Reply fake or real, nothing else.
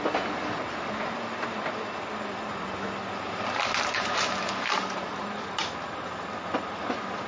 real